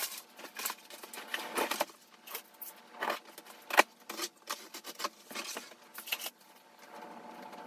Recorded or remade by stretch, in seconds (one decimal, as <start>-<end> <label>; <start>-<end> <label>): 0.0-2.0 remade; 2.0-6.3 recorded; 6.3-7.7 remade